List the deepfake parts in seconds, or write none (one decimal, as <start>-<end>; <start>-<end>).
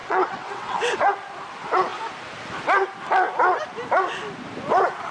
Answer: 0.0-1.1